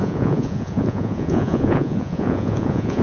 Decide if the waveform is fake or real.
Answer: fake